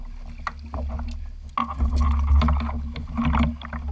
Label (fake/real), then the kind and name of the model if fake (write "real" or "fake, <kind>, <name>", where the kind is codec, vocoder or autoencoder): real